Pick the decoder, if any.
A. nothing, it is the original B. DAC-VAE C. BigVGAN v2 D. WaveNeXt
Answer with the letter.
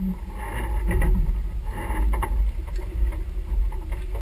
A